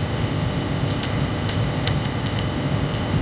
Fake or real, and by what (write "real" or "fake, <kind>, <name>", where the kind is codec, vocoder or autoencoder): fake, codec, ZipCodec